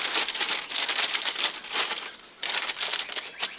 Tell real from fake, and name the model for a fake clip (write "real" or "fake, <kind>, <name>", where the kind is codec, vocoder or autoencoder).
real